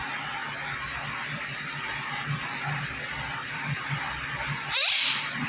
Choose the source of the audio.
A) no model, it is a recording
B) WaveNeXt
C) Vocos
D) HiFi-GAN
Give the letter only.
A